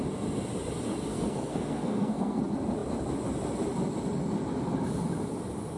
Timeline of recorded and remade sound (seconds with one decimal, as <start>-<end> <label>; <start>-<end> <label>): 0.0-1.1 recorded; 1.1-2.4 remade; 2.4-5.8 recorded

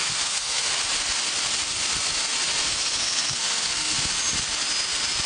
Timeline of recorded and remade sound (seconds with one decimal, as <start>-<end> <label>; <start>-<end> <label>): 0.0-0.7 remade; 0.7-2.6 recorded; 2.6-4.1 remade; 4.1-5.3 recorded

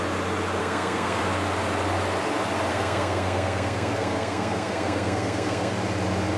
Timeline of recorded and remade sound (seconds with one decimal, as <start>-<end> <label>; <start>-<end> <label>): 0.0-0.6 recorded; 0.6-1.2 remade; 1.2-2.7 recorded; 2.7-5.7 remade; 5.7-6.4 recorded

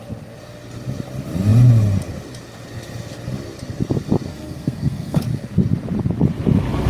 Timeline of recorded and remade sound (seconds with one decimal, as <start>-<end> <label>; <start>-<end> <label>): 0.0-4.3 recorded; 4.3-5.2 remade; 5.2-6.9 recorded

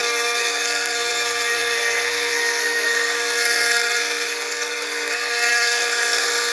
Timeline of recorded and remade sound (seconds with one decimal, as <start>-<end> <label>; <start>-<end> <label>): 0.0-6.5 remade

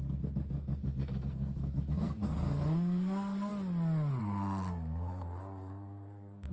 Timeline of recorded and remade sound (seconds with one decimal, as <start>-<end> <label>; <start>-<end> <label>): 0.0-3.5 remade; 3.5-4.2 recorded; 4.2-6.5 remade

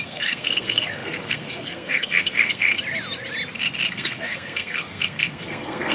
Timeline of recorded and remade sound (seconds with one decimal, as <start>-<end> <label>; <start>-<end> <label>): 0.0-2.7 remade; 2.7-3.9 recorded; 3.9-5.9 remade

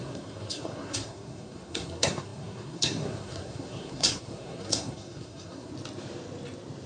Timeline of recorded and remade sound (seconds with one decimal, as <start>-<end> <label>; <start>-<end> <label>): 0.0-5.7 remade; 5.7-6.9 recorded